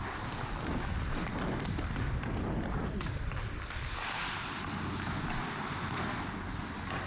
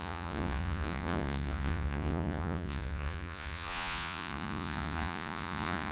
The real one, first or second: first